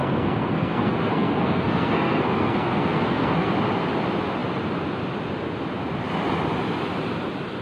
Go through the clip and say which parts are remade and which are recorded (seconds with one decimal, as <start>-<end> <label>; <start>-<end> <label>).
0.0-3.5 remade; 3.5-7.6 recorded